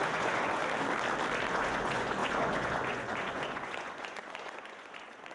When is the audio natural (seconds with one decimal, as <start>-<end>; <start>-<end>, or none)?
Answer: 0.6-1.5